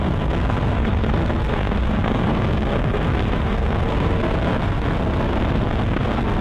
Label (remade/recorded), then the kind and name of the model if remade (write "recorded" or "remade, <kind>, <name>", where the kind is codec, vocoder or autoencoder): remade, codec, SNAC